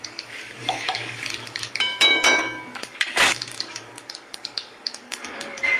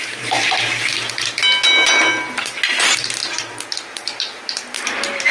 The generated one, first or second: first